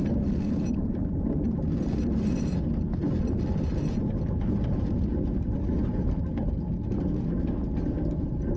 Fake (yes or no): no